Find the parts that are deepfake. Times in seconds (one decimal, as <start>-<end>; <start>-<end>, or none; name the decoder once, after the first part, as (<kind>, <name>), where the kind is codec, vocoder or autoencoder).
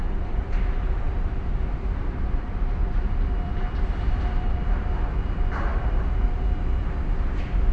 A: 0.0-4.6 (vocoder, BigVGAN v2); 5.7-6.4